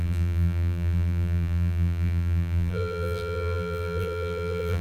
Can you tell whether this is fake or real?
fake